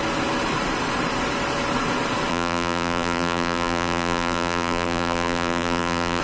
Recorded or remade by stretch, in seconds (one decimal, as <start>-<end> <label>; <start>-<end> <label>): 0.0-2.3 recorded; 2.3-6.2 remade